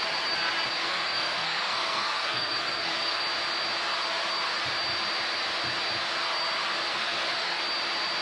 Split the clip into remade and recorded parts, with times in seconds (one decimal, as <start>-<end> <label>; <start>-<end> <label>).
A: 0.0-0.8 recorded; 0.8-3.2 remade; 3.2-6.9 recorded; 6.9-7.6 remade; 7.6-8.2 recorded